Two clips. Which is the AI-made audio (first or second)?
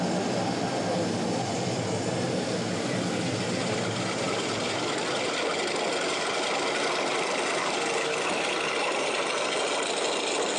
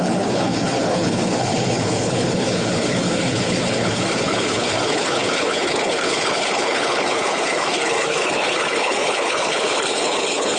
second